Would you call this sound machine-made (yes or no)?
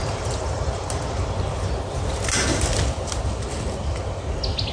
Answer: no